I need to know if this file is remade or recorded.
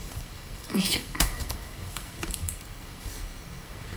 remade